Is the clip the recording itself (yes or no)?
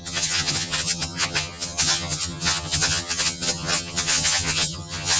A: no